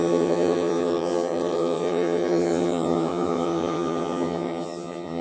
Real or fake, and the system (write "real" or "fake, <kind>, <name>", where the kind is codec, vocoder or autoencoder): fake, vocoder, HiFi-GAN